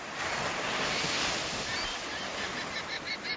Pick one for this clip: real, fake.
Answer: real